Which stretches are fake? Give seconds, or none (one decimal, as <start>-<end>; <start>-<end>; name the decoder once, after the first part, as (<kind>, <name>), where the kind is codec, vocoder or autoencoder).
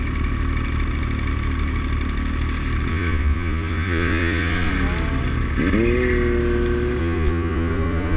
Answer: 2.9-4.7 (vocoder, Vocos); 7.0-8.2